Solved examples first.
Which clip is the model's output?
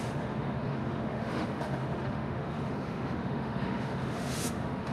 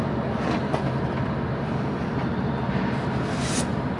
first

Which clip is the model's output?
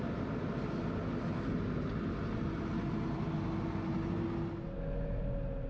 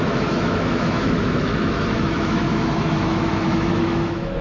second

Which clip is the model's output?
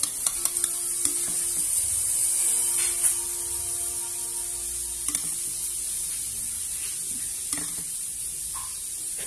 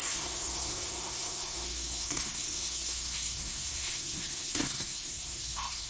second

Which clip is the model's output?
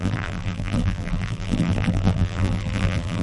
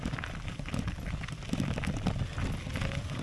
first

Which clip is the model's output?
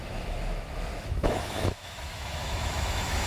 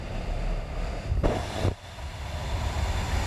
first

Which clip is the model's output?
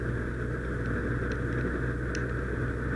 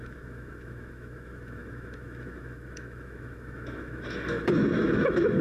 second